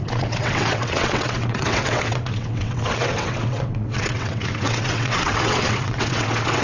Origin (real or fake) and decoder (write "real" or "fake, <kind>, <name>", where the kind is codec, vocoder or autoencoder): fake, vocoder, WaveNeXt